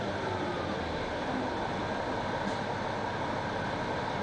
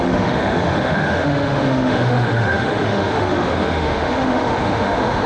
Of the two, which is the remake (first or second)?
second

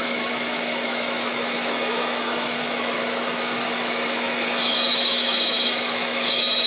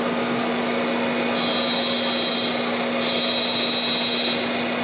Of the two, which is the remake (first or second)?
first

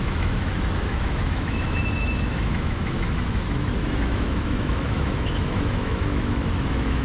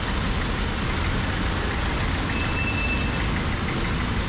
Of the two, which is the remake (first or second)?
first